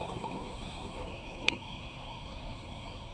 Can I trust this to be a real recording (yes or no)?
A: no